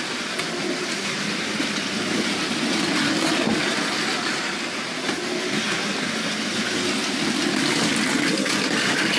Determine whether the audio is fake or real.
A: real